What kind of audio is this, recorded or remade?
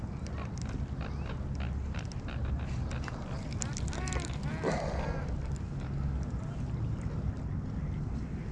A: recorded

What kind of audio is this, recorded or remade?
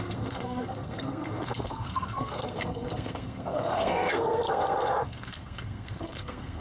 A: remade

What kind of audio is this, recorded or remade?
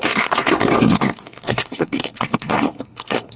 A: remade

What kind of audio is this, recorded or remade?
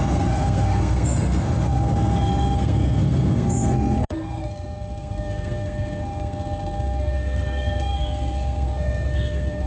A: remade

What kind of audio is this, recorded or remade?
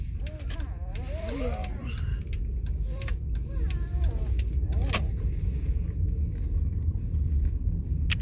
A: recorded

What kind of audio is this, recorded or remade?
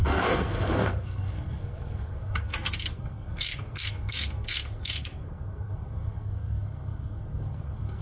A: remade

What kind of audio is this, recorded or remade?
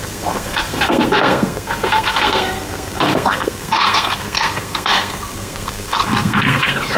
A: remade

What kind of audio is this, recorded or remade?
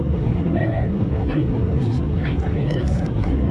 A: remade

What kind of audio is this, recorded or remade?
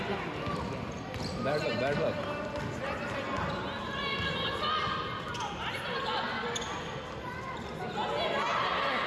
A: recorded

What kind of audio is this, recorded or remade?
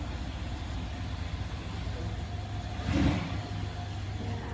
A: recorded